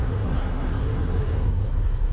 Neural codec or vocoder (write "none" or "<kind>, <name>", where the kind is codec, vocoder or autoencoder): codec, SNAC